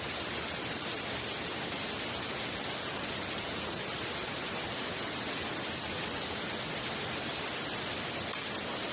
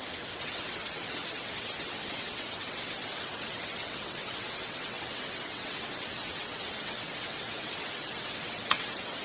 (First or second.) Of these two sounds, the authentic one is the first